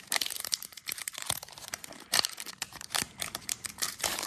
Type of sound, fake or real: fake